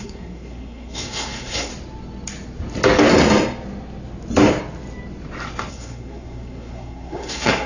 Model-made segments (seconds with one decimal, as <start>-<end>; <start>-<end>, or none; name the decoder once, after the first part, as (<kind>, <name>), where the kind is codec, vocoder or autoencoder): 0.0-1.7 (codec, SNAC); 5.7-7.7